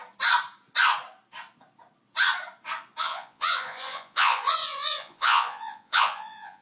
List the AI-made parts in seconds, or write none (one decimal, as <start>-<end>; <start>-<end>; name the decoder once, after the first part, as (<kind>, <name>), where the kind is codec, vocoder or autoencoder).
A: 3.0-6.6 (vocoder, Vocos)